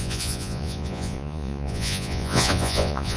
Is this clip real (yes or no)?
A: no